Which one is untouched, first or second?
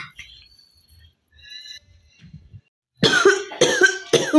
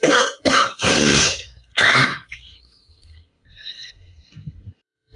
first